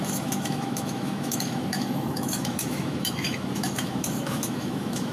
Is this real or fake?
fake